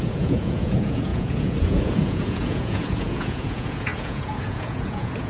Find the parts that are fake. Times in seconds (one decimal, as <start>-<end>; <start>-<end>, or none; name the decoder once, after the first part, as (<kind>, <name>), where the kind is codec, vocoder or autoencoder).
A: 0.0-5.3 (vocoder, Vocos)